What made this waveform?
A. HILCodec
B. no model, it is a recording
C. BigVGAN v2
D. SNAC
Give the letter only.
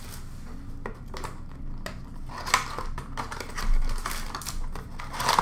B